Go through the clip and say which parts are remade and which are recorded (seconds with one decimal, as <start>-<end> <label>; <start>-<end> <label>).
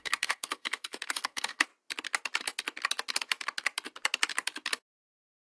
0.0-1.7 remade; 1.7-5.0 recorded; 5.0-5.5 remade